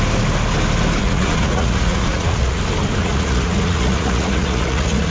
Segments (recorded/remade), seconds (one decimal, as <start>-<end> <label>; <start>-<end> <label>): 0.0-1.0 recorded; 1.0-2.6 remade; 2.6-3.0 recorded; 3.0-5.1 remade

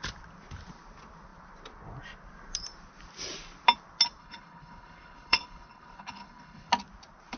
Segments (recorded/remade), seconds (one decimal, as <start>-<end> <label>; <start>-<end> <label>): 0.0-4.2 recorded; 4.2-6.7 remade; 6.7-7.4 recorded

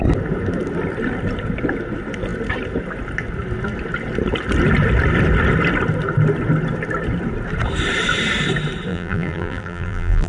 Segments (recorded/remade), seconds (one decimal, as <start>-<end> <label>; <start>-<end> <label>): 0.0-8.9 recorded; 8.9-10.3 remade

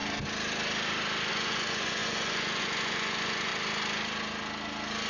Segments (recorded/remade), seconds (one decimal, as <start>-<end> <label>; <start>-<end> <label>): 0.0-1.3 recorded; 1.3-3.5 remade; 3.5-5.1 recorded